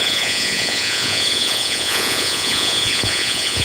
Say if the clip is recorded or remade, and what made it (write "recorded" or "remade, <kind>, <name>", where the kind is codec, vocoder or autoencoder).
remade, vocoder, Vocos